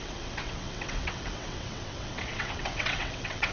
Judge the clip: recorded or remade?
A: remade